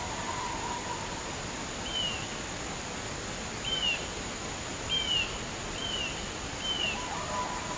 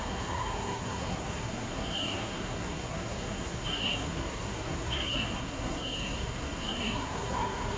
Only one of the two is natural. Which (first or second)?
first